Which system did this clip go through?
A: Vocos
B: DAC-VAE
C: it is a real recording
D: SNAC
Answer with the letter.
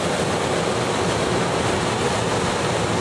C